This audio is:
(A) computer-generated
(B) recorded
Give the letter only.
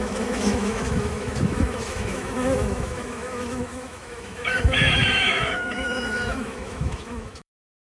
A